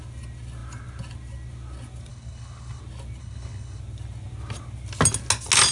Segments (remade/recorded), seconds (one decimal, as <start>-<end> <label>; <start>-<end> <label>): 0.0-2.1 recorded; 2.1-2.8 remade; 2.8-3.2 recorded; 3.2-3.8 remade; 3.8-5.7 recorded